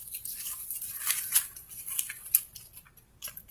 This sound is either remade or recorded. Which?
recorded